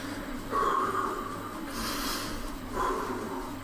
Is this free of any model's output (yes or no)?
yes